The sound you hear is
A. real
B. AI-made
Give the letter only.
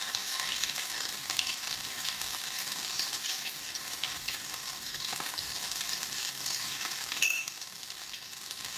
B